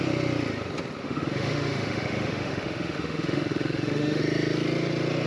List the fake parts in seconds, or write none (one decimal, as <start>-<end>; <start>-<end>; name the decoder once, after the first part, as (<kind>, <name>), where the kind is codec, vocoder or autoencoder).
1.0-4.2 (autoencoder, DAC-VAE)